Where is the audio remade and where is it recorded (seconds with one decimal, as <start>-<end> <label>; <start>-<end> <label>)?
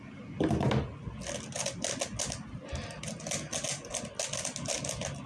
0.0-5.3 recorded